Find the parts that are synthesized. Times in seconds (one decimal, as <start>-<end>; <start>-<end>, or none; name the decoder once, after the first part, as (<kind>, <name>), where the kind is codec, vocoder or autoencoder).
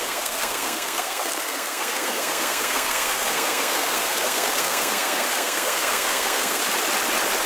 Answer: 0.0-6.6 (codec, SNAC)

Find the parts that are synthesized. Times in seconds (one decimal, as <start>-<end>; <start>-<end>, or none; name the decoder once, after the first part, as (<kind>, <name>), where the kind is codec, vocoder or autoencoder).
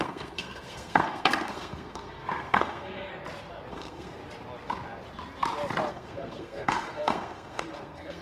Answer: 0.0-3.1 (codec, SNAC); 3.7-4.2; 5.9-8.2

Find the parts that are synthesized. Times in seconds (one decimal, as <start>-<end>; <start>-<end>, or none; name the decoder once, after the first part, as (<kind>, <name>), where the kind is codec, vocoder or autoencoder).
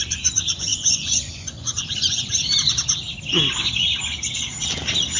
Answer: 0.0-2.3 (vocoder, Vocos)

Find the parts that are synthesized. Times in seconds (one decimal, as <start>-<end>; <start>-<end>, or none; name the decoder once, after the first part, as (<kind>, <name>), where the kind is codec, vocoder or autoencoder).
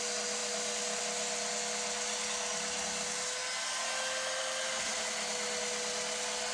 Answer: none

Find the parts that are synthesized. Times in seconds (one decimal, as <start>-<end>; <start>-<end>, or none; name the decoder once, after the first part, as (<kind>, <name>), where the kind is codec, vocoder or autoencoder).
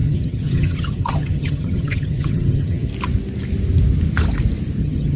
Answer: 0.0-2.9 (vocoder, HiFi-GAN); 4.8-5.2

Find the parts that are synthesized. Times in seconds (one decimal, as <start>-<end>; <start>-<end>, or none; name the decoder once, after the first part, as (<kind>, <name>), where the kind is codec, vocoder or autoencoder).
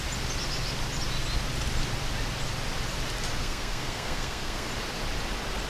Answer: 3.4-4.7 (codec, SNAC)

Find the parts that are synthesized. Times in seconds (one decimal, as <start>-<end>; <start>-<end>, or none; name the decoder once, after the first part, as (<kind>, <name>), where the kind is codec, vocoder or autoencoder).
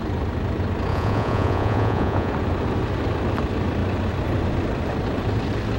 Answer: 0.9-2.3 (vocoder, Vocos)